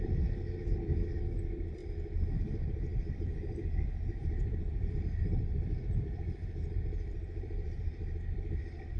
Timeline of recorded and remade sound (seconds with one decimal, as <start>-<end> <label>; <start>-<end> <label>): 0.0-1.8 remade; 1.8-2.4 recorded; 2.4-9.0 remade